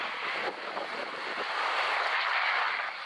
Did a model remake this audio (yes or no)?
no